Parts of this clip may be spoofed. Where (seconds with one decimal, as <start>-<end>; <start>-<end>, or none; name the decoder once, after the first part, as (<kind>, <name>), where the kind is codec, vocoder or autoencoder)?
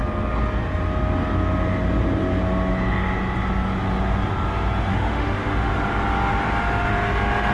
4.9-5.7 (autoencoder, DAC-VAE)